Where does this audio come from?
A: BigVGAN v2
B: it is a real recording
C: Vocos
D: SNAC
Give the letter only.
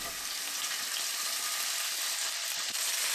A